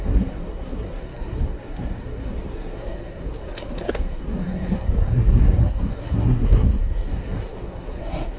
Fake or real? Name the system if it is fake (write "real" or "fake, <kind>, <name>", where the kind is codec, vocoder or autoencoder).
fake, codec, SNAC